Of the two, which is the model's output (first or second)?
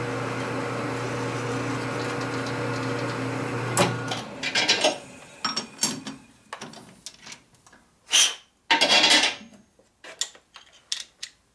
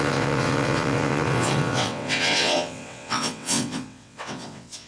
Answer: second